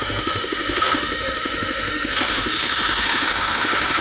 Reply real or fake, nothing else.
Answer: fake